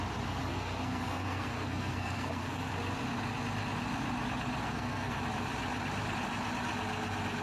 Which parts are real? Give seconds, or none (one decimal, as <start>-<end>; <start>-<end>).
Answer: 0.0-0.5; 2.7-4.6; 5.2-7.4